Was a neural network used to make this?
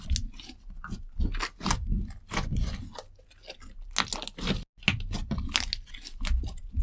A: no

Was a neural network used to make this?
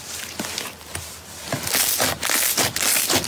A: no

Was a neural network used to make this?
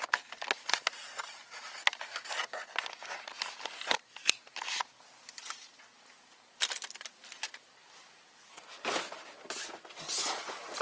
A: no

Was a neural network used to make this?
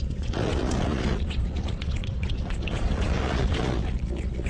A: yes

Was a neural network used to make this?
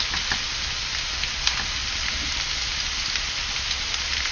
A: no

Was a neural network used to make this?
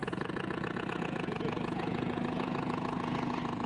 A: yes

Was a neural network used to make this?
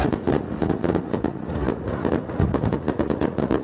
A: yes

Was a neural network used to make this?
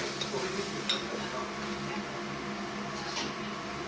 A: no